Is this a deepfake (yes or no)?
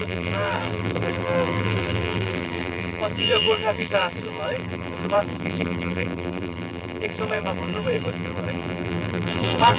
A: yes